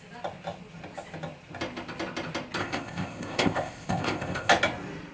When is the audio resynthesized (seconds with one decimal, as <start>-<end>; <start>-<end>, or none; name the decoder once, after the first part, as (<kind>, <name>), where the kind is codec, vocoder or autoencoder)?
2.6-4.5 (codec, ZipCodec)